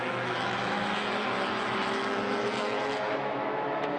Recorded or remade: remade